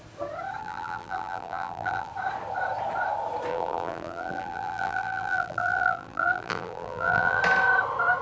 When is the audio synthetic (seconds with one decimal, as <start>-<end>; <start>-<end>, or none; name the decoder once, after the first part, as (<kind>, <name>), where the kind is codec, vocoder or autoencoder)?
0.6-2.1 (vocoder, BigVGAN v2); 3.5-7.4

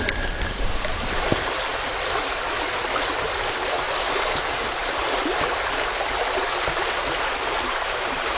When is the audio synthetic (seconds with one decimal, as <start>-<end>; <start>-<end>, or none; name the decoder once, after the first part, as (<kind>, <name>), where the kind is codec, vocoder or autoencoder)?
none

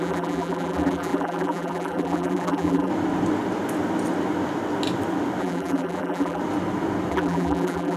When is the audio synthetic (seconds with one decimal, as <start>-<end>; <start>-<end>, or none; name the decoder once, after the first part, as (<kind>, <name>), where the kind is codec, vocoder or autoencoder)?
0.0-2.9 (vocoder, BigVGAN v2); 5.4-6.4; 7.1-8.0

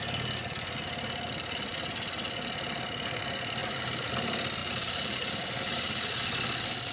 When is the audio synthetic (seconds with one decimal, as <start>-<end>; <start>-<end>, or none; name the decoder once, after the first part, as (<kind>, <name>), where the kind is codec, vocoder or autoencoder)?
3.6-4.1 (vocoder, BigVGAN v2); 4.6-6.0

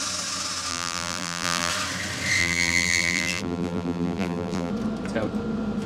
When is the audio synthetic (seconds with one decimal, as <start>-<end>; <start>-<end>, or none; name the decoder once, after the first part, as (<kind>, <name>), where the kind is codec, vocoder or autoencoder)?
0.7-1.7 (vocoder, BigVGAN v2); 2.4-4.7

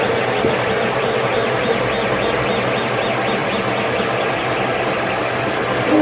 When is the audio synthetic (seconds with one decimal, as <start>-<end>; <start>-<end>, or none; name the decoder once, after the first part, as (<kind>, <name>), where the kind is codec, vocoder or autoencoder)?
none